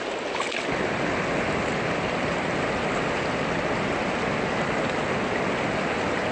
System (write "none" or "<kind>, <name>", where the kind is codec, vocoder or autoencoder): none